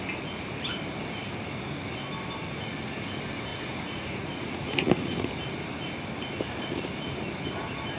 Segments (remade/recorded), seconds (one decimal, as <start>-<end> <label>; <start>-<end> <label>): 0.0-3.5 recorded; 3.5-5.3 remade; 5.3-8.0 recorded